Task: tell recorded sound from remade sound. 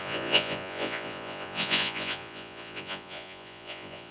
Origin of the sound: remade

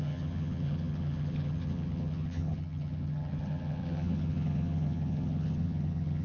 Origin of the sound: remade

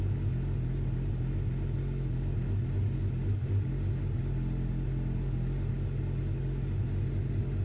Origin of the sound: recorded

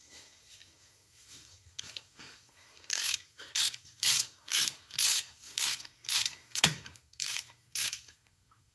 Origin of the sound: remade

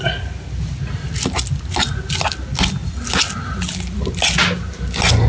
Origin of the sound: recorded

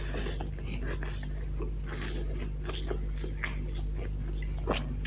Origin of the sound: recorded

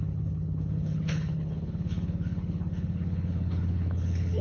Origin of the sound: remade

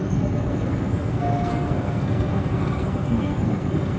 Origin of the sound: remade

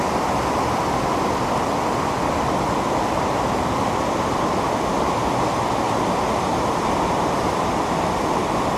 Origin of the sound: recorded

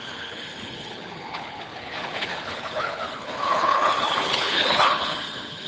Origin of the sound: remade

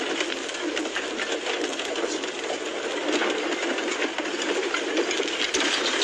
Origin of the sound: recorded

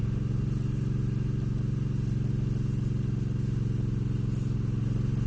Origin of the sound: recorded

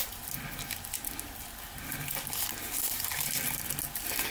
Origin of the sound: recorded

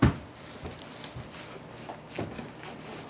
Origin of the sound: recorded